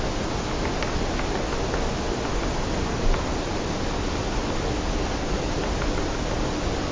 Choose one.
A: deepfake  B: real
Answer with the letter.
B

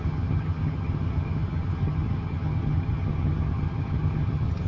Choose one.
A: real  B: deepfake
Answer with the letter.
B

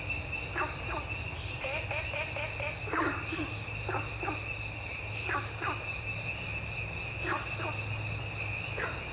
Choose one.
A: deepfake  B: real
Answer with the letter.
B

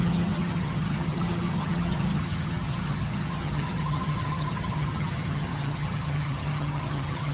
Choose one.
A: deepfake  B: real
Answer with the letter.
A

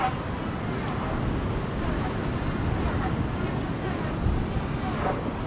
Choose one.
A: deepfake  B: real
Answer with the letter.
B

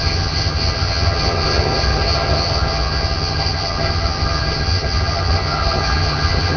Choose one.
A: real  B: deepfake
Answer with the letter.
B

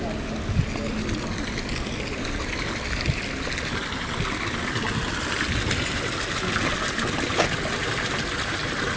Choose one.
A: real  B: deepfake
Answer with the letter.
A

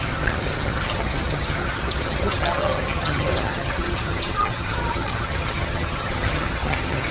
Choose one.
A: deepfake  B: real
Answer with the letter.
A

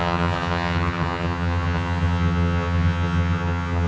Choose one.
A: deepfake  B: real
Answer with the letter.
A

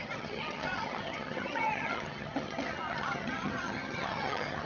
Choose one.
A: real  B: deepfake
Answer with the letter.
B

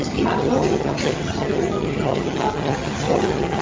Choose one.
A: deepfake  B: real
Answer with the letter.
A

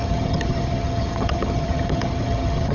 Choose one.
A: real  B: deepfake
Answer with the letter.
B